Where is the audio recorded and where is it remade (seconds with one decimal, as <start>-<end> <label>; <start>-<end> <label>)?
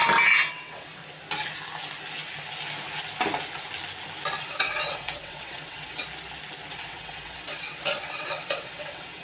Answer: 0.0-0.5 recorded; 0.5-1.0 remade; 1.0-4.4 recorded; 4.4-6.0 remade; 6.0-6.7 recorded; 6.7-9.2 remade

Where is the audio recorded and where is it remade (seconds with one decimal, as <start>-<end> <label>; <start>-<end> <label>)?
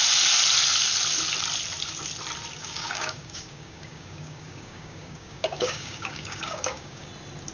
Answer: 0.0-2.6 recorded; 2.6-7.1 remade; 7.1-7.5 recorded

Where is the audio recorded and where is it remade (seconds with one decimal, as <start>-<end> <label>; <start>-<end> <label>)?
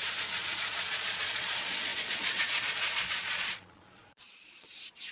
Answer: 0.0-5.1 remade